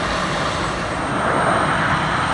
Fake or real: real